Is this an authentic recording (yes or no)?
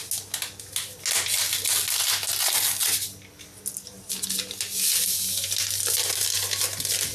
yes